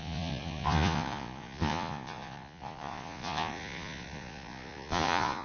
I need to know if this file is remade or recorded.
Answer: remade